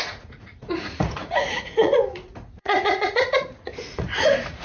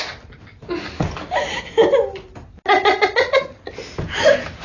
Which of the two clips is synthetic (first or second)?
first